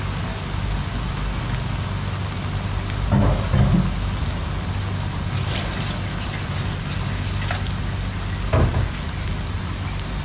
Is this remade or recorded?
recorded